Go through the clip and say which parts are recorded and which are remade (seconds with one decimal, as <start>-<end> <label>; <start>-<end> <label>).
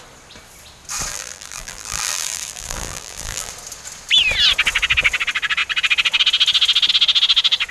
0.0-1.1 recorded; 1.1-3.5 remade; 3.5-7.7 recorded